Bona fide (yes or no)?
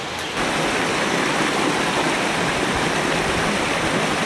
yes